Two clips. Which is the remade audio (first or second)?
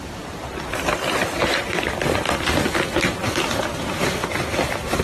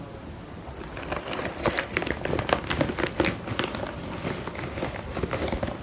first